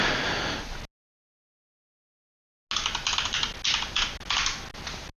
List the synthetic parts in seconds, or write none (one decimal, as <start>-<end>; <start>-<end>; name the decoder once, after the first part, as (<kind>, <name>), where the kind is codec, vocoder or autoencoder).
1.3-1.9 (codec, SNAC)